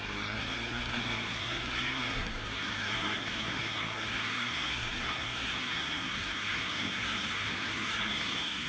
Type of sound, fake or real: fake